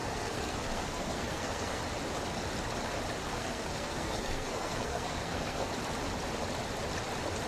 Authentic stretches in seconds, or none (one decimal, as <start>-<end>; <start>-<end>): 1.8-3.2; 5.7-7.5